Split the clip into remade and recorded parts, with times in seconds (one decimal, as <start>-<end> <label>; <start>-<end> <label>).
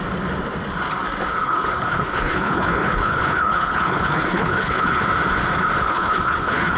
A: 0.0-1.3 recorded; 1.3-5.0 remade; 5.0-5.8 recorded; 5.8-6.8 remade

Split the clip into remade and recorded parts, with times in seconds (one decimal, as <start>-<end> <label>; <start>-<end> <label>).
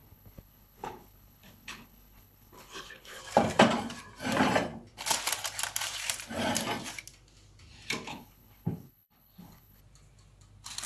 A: 0.0-3.2 remade; 3.2-8.1 recorded; 8.1-9.8 remade; 9.8-10.9 recorded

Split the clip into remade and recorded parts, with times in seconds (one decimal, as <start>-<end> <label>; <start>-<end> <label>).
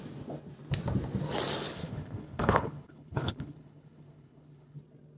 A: 0.0-1.7 recorded; 1.7-4.8 remade; 4.8-5.2 recorded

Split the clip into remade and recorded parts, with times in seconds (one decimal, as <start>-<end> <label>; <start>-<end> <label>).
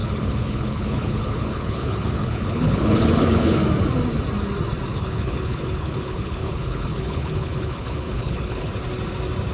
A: 0.0-3.6 remade; 3.6-4.9 recorded; 4.9-8.7 remade; 8.7-9.5 recorded